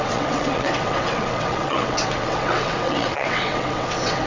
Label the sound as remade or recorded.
remade